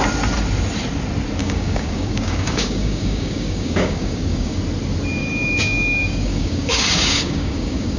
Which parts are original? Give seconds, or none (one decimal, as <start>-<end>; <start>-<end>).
0.0-1.4; 4.6-5.2